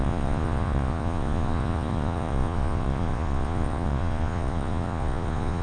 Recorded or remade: remade